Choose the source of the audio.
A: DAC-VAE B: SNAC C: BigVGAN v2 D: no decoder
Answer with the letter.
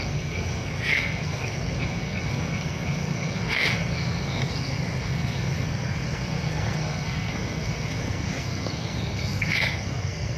B